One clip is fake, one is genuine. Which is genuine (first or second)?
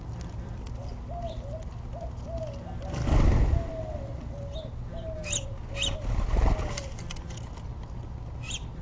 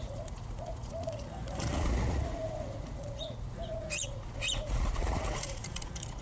first